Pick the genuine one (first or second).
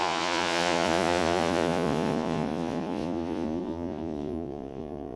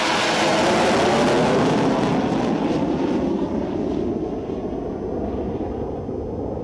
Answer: second